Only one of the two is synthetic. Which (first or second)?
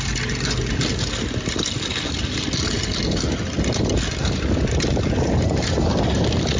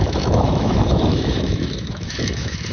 second